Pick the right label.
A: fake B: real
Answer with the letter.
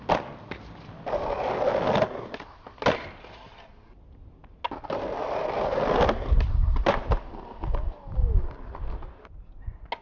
B